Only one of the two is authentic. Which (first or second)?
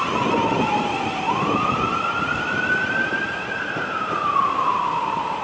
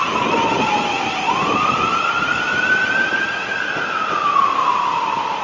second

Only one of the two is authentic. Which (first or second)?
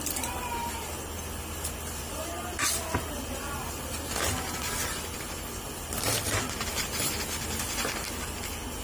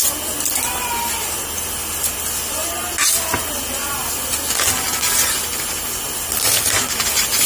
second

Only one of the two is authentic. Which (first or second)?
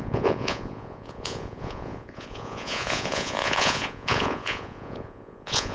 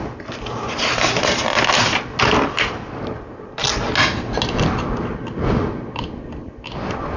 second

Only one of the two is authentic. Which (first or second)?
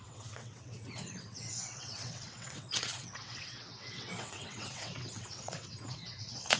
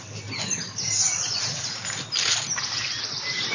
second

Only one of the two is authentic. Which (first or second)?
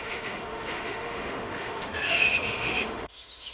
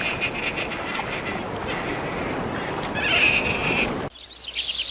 second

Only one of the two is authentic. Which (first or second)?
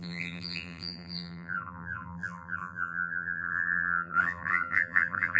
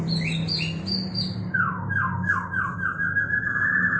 second